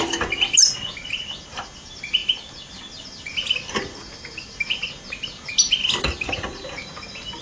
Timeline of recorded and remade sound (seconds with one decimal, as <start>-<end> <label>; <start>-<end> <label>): 0.0-7.4 recorded